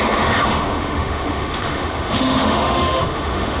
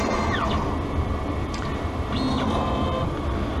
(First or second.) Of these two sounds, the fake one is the first